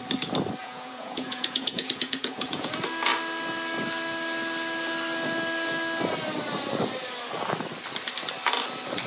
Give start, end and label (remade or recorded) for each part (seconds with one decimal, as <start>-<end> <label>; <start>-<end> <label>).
0.0-0.6 recorded; 0.6-2.7 remade; 2.7-9.1 recorded